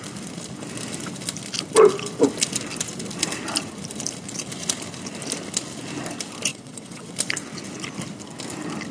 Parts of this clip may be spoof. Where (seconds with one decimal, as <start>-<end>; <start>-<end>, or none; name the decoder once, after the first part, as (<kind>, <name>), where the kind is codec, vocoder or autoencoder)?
6.5-7.1 (vocoder, WaveNeXt)